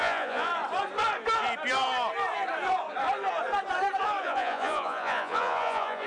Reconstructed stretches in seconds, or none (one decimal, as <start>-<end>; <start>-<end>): 0.0-0.5; 4.2-6.1